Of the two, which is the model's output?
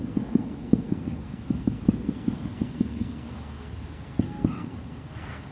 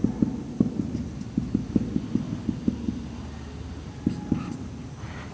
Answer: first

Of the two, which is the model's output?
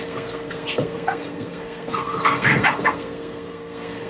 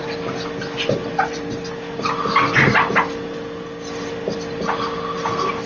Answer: first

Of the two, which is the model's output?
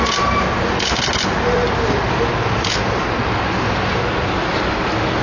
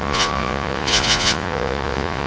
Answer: second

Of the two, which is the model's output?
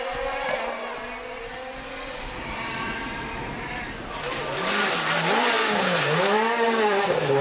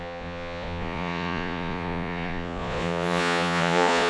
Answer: second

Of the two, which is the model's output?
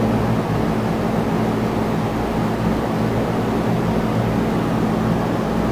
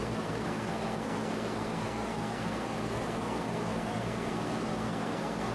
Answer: second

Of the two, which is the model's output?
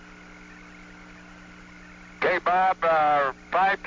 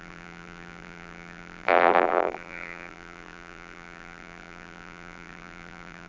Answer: second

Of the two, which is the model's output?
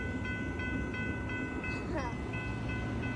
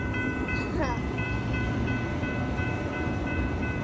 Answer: second